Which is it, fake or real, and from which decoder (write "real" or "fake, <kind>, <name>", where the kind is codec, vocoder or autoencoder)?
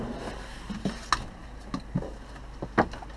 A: real